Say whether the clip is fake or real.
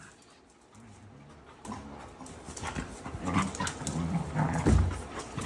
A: real